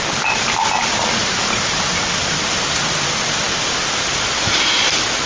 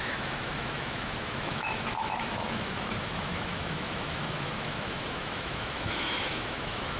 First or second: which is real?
first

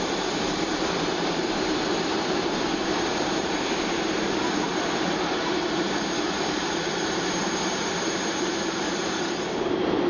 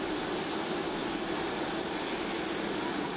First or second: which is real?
second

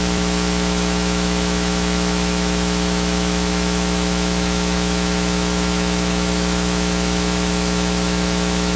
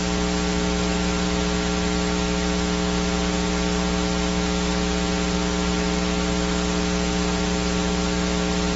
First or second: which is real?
second